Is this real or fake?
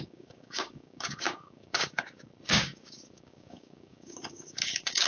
fake